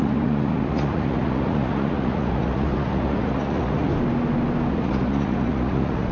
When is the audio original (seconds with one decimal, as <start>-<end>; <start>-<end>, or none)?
3.9-4.7